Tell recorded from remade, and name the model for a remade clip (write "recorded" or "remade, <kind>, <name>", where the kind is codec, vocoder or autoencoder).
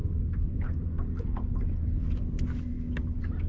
recorded